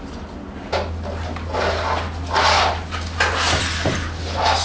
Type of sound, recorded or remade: recorded